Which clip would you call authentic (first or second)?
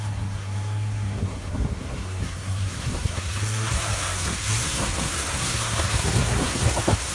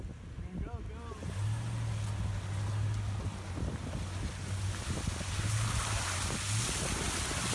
second